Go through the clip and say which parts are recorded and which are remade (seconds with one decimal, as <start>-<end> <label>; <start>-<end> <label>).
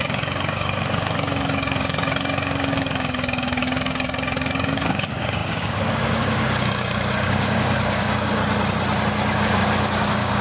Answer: 0.0-8.4 remade; 8.4-9.4 recorded; 9.4-10.4 remade